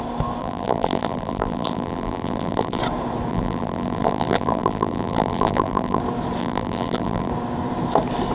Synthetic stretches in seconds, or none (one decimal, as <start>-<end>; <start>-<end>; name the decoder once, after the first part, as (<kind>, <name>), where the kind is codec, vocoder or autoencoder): 0.4-2.8 (vocoder, BigVGAN v2); 3.3-6.0; 6.4-7.3

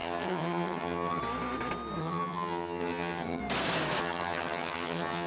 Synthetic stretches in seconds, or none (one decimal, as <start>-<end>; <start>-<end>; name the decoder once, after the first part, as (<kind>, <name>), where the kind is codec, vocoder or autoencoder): 0.0-1.2 (vocoder, HiFi-GAN); 2.0-3.4; 4.0-5.3